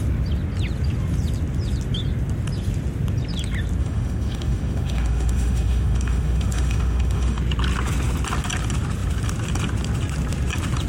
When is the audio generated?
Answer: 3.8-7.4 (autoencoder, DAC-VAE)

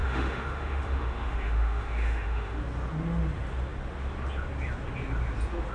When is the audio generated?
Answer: 0.0-2.6 (autoencoder, DAC-VAE)

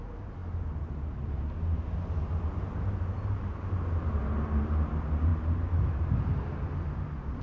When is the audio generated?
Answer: none

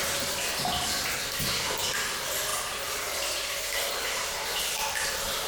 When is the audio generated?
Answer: none

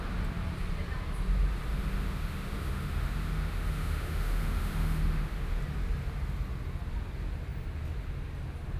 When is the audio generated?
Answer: 1.7-5.6 (autoencoder, DAC-VAE)

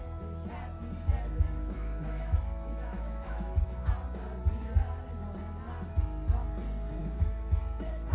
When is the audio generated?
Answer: 1.6-3.9 (autoencoder, DAC-VAE); 7.0-7.6

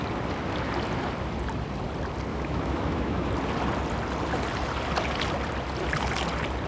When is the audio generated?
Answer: 2.3-3.3 (autoencoder, DAC-VAE)